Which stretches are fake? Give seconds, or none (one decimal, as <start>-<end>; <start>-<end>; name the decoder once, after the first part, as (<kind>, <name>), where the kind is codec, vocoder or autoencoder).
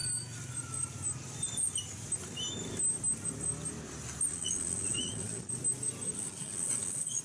4.3-5.5 (vocoder, Vocos); 6.1-7.2